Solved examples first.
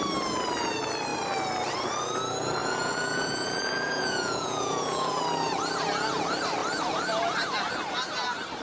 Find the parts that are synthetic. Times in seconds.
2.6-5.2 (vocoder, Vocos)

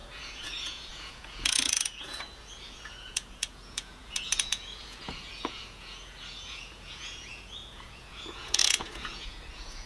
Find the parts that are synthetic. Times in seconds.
0.0-9.9 (vocoder, Vocos)

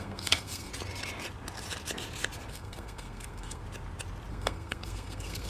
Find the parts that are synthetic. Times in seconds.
0.0-0.7 (codec, SNAC); 2.5-3.6; 4.3-5.5